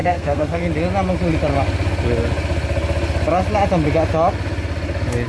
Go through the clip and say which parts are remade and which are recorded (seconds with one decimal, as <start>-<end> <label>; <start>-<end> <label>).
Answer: 0.0-0.6 remade; 0.6-5.3 recorded